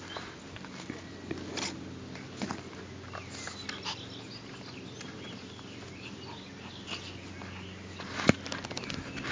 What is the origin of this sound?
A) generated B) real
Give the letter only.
B